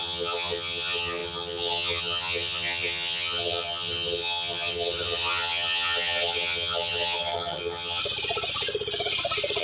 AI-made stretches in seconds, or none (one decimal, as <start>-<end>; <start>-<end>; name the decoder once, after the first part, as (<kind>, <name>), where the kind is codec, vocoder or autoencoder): 0.0-8.0 (vocoder, HiFi-GAN)